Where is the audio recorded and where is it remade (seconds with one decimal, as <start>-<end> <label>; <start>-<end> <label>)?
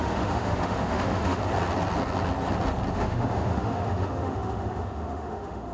0.0-1.4 remade; 1.4-2.9 recorded; 2.9-5.7 remade